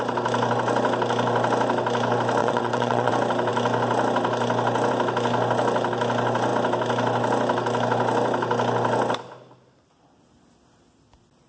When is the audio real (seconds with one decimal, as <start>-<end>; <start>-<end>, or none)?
0.0-2.4; 3.1-11.5